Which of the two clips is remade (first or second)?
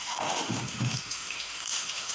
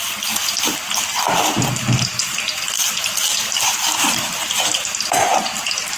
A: first